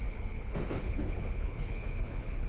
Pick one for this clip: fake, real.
fake